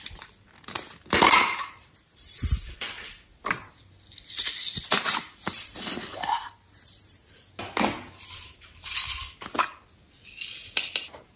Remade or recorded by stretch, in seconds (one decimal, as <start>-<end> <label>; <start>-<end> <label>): 0.0-3.3 remade; 3.3-5.0 recorded; 5.0-7.2 remade; 7.2-8.2 recorded; 8.2-9.2 remade; 9.2-10.9 recorded; 10.9-11.4 remade